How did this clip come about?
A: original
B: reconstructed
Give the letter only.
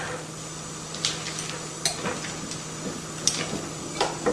A